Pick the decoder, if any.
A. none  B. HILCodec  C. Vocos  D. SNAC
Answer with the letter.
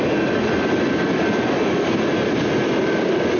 A